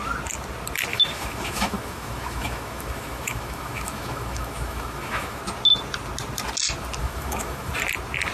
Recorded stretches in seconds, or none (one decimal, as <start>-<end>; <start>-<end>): 0.0-0.9; 5.4-7.0; 7.7-8.3